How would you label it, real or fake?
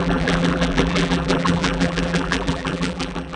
fake